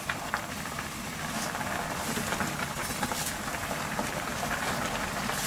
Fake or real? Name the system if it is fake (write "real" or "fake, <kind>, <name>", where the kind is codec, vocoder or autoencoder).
fake, vocoder, BigVGAN v2